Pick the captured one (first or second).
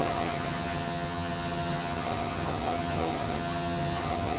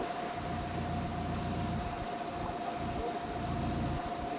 second